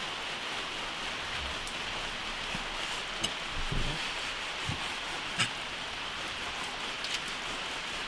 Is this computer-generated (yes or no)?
no